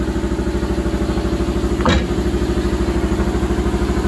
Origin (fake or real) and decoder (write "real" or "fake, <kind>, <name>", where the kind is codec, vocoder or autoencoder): real